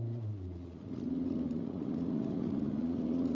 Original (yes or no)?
no